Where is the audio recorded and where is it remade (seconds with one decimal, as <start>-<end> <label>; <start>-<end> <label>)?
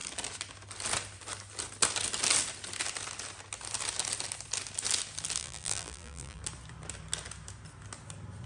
0.0-5.4 recorded; 5.4-6.4 remade; 6.4-8.5 recorded